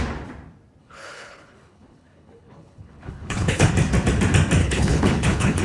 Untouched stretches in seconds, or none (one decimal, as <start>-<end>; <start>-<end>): 0.0-0.8; 3.7-4.6